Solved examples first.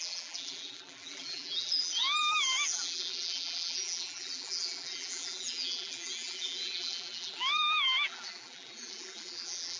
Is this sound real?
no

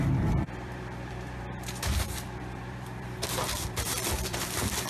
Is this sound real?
no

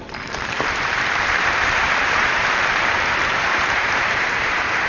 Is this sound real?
no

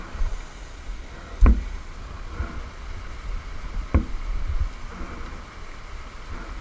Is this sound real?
yes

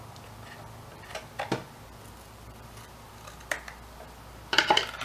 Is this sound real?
no